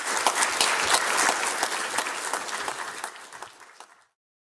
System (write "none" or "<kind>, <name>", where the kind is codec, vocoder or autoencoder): none